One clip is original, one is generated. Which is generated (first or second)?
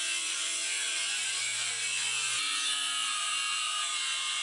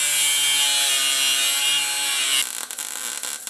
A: first